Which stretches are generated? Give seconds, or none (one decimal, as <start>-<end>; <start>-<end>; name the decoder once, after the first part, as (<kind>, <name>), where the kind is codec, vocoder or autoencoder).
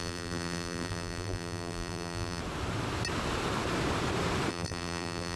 0.0-2.4 (vocoder, BigVGAN v2); 4.5-5.4